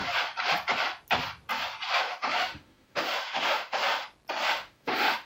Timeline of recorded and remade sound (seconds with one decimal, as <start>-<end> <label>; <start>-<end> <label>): 0.0-2.0 recorded; 2.0-3.8 remade; 3.8-4.5 recorded; 4.5-5.3 remade

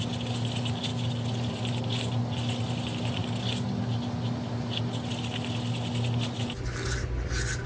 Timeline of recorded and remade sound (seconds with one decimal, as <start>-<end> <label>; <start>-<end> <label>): 0.0-7.7 recorded